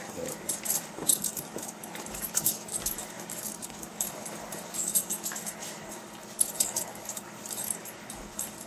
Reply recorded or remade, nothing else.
remade